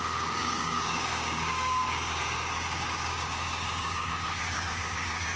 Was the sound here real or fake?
fake